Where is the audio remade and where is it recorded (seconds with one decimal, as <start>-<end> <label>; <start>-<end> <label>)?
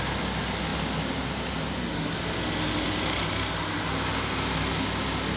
0.0-5.4 recorded